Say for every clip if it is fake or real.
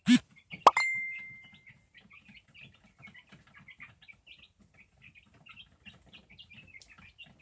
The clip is real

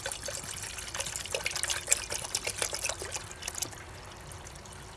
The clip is real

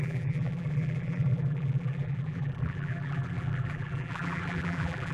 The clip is fake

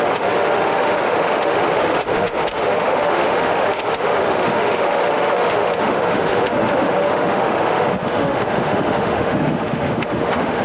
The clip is fake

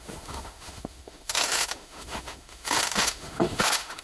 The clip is fake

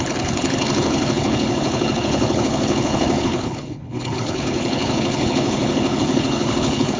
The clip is fake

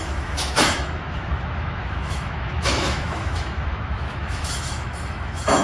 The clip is fake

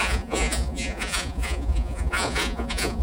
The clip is fake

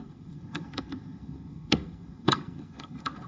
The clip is fake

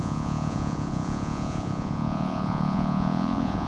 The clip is fake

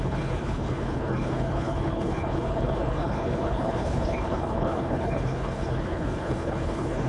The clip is fake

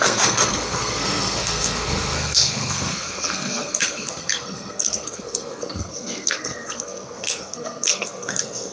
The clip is fake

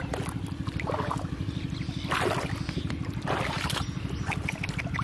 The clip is real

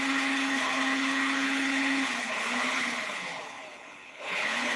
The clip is fake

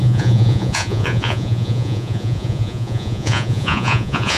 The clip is fake